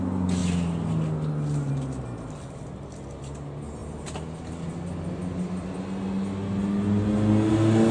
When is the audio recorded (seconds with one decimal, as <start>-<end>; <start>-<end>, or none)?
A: 0.0-7.9